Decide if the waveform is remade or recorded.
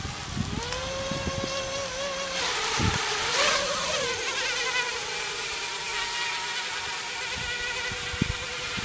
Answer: recorded